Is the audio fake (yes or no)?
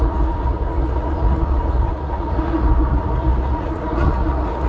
yes